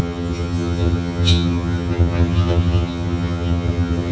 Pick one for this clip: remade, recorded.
remade